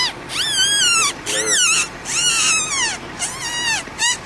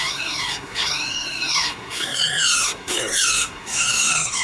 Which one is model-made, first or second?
second